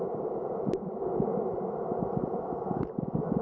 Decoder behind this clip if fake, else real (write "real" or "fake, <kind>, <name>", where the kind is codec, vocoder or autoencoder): real